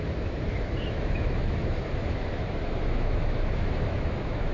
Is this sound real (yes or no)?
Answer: no